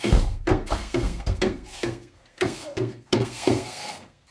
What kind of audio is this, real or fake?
fake